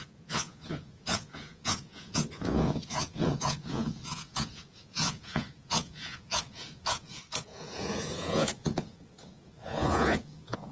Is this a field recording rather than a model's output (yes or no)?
no